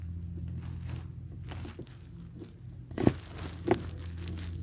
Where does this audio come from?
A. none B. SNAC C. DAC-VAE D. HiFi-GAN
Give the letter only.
A